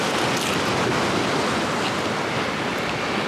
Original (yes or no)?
yes